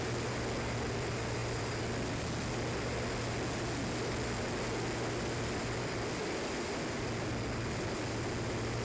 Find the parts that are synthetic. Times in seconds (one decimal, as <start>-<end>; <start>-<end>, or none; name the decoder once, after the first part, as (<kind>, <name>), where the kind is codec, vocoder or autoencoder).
none